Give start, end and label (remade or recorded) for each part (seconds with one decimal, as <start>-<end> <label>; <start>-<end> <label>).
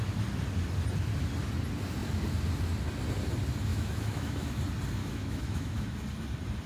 0.0-3.7 recorded; 3.7-4.6 remade; 4.6-5.0 recorded; 5.0-5.9 remade; 5.9-6.7 recorded